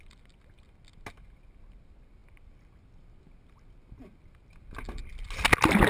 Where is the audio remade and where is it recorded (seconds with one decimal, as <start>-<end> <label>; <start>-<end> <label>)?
0.0-5.9 recorded